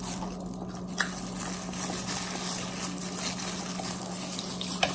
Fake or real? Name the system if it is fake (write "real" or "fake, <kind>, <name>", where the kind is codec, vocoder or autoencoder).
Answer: real